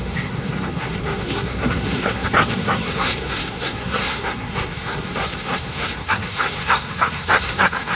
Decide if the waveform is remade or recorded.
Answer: remade